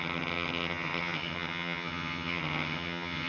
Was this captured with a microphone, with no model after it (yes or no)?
no